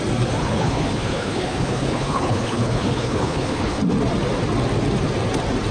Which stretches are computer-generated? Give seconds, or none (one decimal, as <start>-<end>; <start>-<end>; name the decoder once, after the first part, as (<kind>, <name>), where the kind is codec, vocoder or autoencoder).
0.4-3.8 (codec, HILCodec)